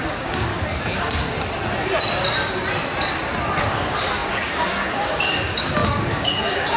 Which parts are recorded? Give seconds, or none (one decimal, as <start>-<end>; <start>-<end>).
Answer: 0.5-3.6